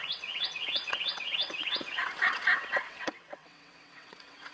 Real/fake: fake